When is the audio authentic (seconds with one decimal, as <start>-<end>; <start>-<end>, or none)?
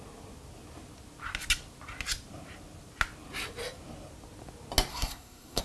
0.0-4.9